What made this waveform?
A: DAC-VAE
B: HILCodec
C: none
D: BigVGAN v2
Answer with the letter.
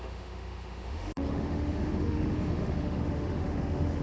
A